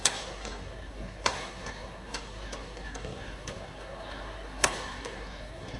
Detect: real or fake fake